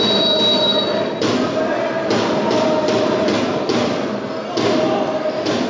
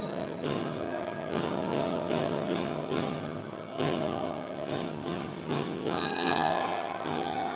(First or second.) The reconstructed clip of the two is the second